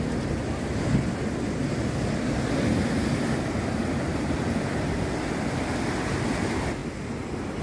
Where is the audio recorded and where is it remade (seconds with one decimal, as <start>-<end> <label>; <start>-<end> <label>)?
0.0-7.6 recorded